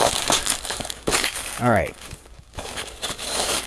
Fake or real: fake